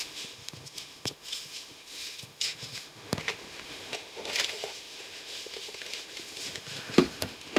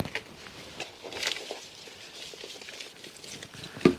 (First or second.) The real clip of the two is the second